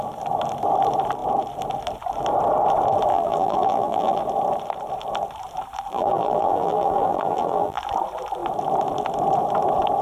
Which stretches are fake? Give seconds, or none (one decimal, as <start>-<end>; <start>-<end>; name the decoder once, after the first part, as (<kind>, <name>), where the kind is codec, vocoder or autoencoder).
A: 3.1-4.2 (vocoder, BigVGAN v2); 5.9-7.8